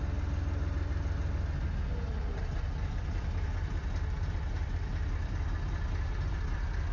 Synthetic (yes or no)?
no